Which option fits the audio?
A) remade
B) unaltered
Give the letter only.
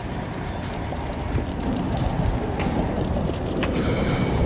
A